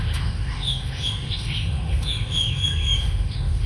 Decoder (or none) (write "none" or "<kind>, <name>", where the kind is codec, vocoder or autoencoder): autoencoder, DAC-VAE